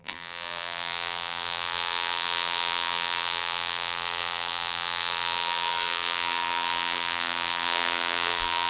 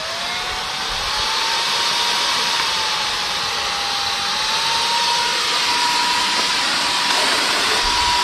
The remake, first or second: first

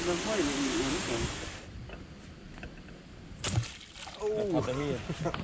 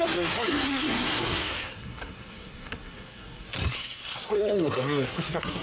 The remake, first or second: second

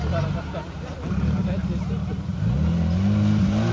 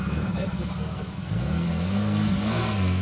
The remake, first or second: second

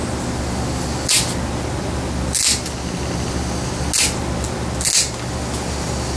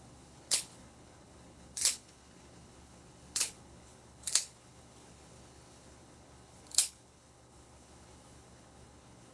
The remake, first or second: second